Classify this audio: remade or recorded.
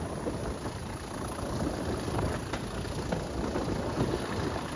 recorded